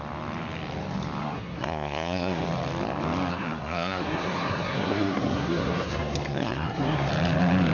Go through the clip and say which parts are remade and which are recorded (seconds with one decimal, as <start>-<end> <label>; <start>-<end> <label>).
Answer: 0.0-1.2 recorded; 1.2-2.4 remade; 2.4-3.3 recorded; 3.3-7.1 remade; 7.1-7.7 recorded